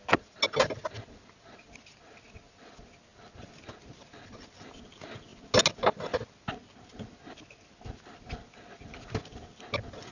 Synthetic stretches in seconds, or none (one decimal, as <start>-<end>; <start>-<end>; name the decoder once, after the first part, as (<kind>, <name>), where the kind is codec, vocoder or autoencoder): none

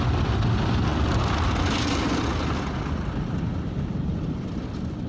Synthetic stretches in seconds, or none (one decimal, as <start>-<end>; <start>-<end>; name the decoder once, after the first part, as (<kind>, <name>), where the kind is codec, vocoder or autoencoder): none